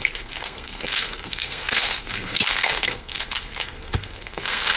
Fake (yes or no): yes